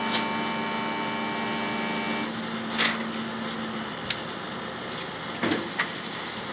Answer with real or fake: real